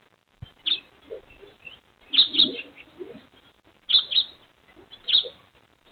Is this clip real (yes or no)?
yes